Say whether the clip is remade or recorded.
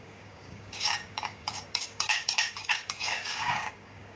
remade